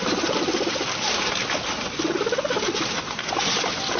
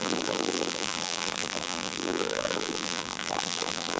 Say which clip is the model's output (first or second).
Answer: second